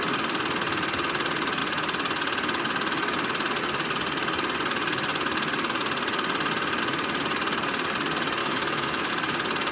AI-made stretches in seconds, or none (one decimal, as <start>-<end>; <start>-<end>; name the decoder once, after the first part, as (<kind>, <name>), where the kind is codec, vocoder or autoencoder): 8.4-9.1 (autoencoder, DAC-VAE)